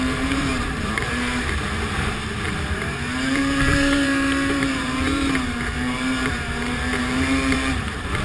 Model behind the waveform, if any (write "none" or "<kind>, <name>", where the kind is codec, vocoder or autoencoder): vocoder, BigVGAN v2